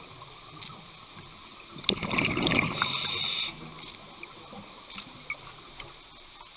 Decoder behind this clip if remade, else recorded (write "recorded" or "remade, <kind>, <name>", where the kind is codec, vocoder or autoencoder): recorded